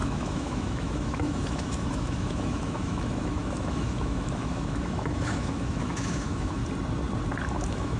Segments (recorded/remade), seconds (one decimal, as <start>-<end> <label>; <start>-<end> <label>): 0.0-6.6 remade; 6.6-7.6 recorded; 7.6-8.0 remade

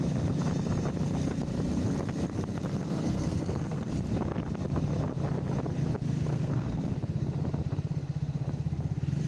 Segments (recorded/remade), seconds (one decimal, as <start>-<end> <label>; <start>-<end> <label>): 0.0-2.7 recorded; 2.7-3.9 remade; 3.9-6.3 recorded; 6.3-6.9 remade; 6.9-9.3 recorded

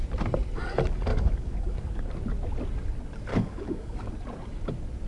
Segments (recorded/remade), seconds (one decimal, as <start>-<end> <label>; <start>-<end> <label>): 0.0-1.1 recorded; 1.1-2.1 remade; 2.1-3.3 recorded; 3.3-4.1 remade; 4.1-5.1 recorded

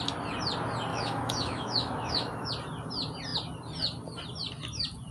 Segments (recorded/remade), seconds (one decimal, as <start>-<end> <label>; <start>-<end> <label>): 0.0-0.9 recorded; 0.9-2.5 remade; 2.5-5.1 recorded

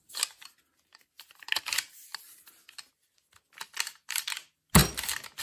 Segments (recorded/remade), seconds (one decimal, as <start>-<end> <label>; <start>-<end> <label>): 0.0-5.4 recorded